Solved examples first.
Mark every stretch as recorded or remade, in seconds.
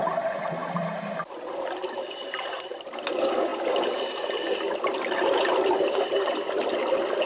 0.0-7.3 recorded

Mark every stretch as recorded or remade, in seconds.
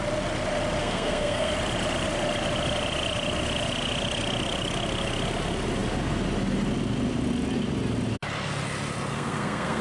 0.0-0.8 recorded; 0.8-1.5 remade; 1.5-9.1 recorded; 9.1-9.8 remade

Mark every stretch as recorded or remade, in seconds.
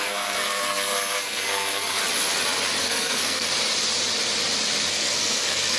0.0-2.0 remade; 2.0-2.8 recorded; 2.8-3.5 remade; 3.5-4.9 recorded; 4.9-5.8 remade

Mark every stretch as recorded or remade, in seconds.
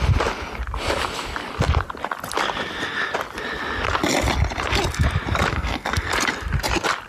0.0-5.5 recorded; 5.5-6.1 remade; 6.1-7.1 recorded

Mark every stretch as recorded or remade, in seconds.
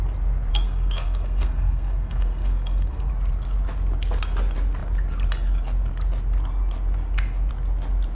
0.0-0.5 recorded; 0.5-3.1 remade; 3.1-8.1 recorded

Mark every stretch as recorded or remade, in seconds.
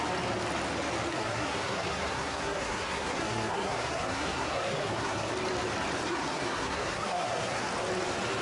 0.0-1.1 recorded; 1.1-5.3 remade; 5.3-6.1 recorded; 6.1-7.7 remade; 7.7-8.4 recorded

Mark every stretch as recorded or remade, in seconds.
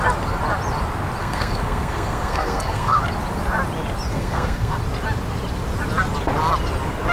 0.0-1.2 recorded; 1.2-3.0 remade; 3.0-4.1 recorded; 4.1-4.8 remade; 4.8-7.1 recorded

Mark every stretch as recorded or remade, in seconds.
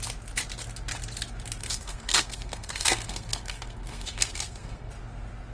0.0-1.6 recorded; 1.6-4.9 remade; 4.9-5.5 recorded